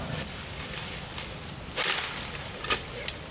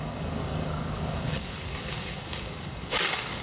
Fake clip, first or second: second